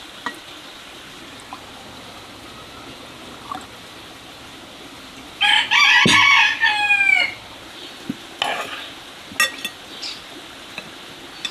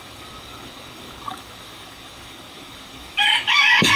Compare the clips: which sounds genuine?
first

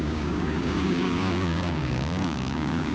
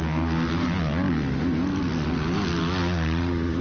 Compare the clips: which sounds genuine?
second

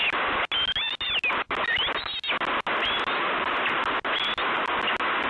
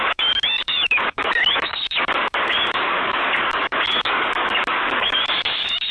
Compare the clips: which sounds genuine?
first